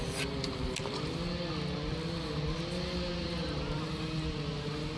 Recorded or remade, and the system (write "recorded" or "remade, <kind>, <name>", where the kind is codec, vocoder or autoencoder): recorded